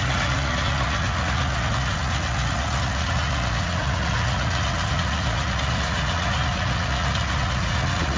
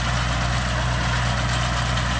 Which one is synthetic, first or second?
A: first